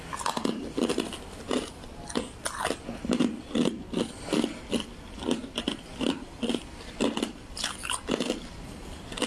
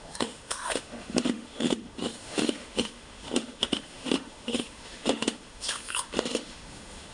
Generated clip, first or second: second